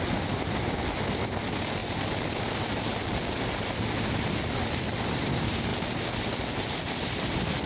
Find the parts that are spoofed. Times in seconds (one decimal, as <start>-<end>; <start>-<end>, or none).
none